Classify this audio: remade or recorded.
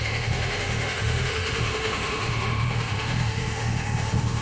remade